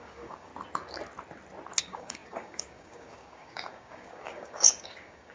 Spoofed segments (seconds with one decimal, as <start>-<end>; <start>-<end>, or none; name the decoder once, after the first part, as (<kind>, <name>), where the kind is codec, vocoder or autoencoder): 0.0-0.5 (codec, DAC); 1.8-5.3